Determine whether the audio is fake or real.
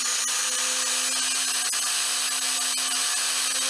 real